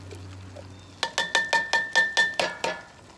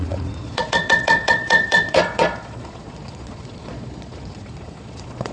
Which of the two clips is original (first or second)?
first